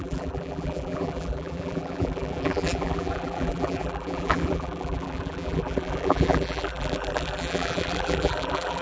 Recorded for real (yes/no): no